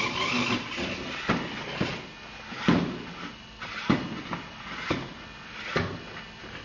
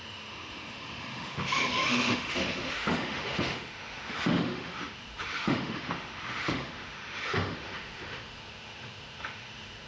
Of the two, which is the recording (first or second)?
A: first